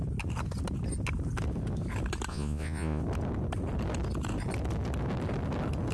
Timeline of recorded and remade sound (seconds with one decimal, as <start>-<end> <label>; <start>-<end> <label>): 0.0-2.3 recorded; 2.3-3.0 remade; 3.0-5.9 recorded